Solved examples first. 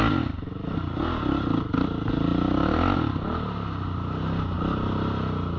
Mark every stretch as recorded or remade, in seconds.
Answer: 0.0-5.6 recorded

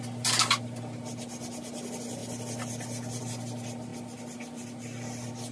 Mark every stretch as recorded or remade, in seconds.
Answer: 0.0-5.5 recorded

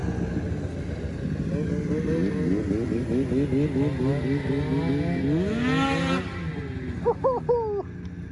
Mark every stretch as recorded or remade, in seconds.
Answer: 0.0-8.3 recorded

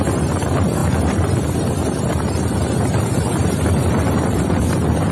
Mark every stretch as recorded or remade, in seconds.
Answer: 0.0-5.1 recorded